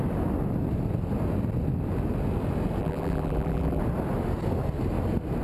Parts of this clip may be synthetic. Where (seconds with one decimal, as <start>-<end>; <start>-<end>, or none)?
2.8-3.8